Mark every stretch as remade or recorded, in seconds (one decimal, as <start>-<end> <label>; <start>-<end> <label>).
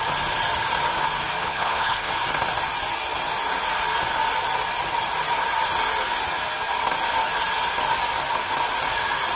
0.0-1.4 recorded; 1.4-2.1 remade; 2.1-9.3 recorded